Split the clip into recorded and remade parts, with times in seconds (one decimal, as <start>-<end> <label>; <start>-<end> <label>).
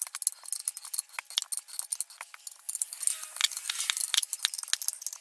0.0-5.2 recorded